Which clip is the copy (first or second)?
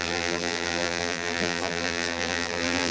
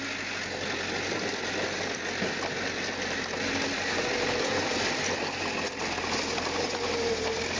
first